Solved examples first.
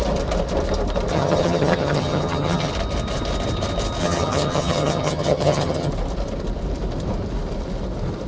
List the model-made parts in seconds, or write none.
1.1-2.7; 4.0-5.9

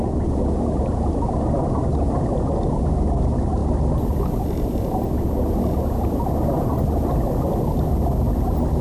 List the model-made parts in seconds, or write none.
none

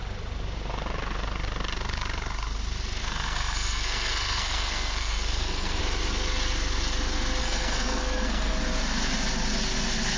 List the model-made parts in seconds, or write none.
3.0-5.8; 7.4-8.5

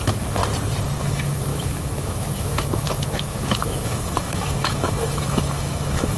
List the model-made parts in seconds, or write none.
0.0-0.4; 1.0-6.2